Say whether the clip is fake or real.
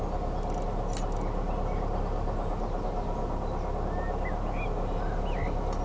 real